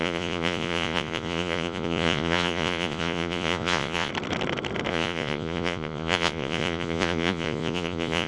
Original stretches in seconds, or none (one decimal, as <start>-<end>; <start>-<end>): 4.1-4.9